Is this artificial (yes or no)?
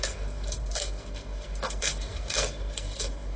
yes